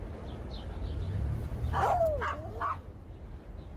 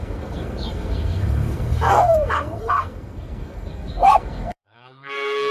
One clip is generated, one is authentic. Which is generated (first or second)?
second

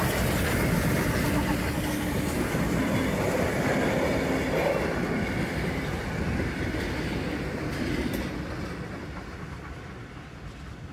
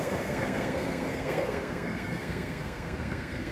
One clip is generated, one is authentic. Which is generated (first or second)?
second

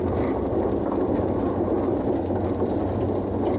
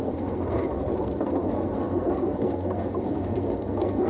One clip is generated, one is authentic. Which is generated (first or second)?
second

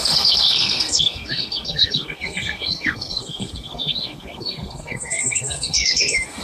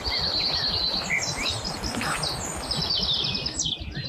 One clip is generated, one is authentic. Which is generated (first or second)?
first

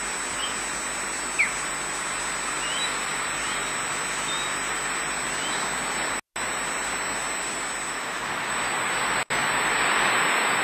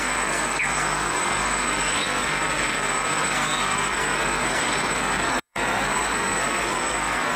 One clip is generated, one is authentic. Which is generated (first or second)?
second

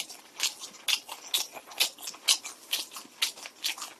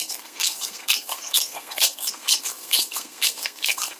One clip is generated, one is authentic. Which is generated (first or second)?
second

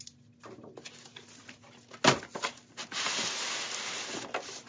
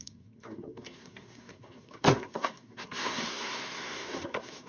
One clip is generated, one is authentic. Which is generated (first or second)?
second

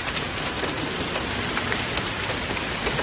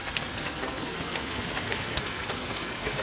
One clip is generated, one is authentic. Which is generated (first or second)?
second